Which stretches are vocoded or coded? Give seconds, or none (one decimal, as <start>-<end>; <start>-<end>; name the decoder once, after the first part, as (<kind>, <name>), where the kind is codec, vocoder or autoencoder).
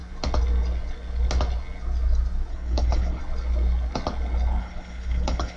2.5-3.2 (codec, HILCodec); 4.6-5.6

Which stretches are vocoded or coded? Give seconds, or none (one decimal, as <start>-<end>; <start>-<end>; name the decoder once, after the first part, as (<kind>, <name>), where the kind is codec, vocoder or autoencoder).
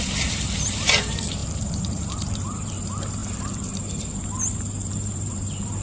0.0-5.8 (vocoder, BigVGAN v2)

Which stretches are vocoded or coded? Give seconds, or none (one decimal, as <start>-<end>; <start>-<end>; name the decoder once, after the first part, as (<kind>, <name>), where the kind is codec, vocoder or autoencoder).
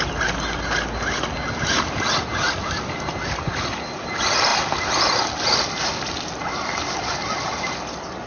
none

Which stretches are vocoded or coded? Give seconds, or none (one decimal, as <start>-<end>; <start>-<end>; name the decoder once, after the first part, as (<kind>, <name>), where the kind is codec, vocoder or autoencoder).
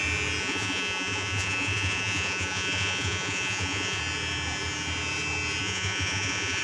0.4-4.0 (vocoder, Vocos); 5.6-6.6